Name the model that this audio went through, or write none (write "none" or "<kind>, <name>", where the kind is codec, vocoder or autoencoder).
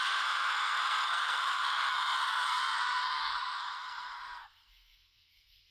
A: codec, SNAC